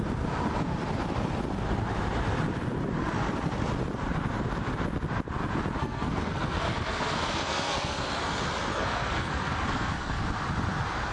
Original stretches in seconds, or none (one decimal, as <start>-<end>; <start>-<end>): 0.0-5.8; 8.1-8.7; 10.2-11.1